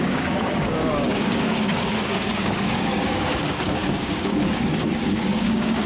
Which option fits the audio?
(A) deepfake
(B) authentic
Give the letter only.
A